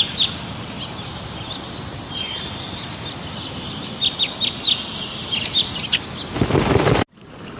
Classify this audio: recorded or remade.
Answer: recorded